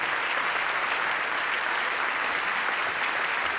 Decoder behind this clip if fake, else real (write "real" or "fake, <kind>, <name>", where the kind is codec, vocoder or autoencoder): real